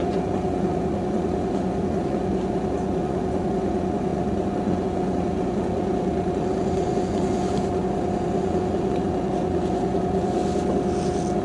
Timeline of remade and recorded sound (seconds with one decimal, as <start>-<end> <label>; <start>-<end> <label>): 0.0-10.4 remade; 10.4-11.4 recorded